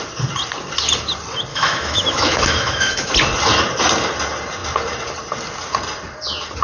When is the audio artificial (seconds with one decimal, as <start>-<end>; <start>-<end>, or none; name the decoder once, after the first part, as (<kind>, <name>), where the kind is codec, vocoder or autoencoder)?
1.5-3.1 (autoencoder, DAC-VAE)